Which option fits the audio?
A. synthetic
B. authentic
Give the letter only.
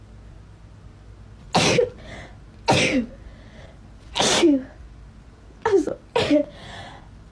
B